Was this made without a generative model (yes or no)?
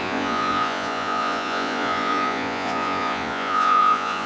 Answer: no